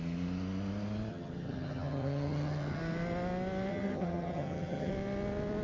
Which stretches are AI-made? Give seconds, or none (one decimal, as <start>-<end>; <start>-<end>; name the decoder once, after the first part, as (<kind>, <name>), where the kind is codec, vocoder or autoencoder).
1.1-2.8 (vocoder, HiFi-GAN); 3.7-4.9